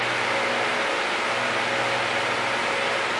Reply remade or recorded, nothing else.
recorded